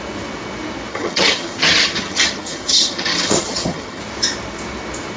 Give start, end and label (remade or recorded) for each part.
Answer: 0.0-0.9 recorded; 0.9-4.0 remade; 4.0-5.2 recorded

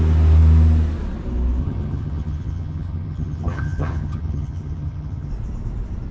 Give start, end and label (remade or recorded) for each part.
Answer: 0.0-1.6 recorded; 1.6-5.3 remade; 5.3-6.1 recorded

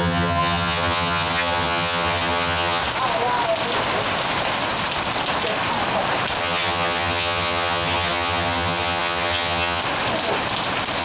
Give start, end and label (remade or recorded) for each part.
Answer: 0.0-2.8 remade; 2.8-6.4 recorded; 6.4-9.8 remade; 9.8-11.0 recorded

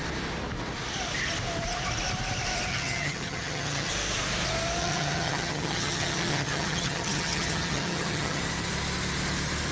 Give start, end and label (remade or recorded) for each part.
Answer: 0.0-2.7 recorded; 2.7-3.9 remade; 3.9-4.8 recorded; 4.8-8.4 remade; 8.4-9.7 recorded

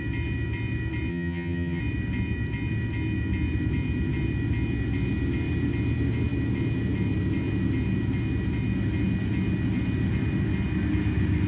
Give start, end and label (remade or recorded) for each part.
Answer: 0.0-1.1 recorded; 1.1-1.8 remade; 1.8-11.5 recorded